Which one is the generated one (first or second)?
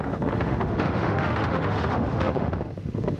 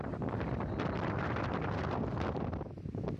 first